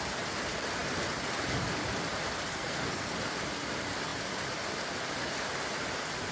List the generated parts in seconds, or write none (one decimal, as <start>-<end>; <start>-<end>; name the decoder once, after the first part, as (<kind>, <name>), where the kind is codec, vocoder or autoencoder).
2.5-3.1 (codec, SNAC)